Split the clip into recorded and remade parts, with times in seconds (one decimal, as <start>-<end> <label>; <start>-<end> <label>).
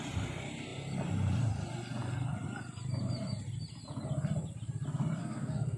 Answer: 0.0-5.2 recorded; 5.2-5.8 remade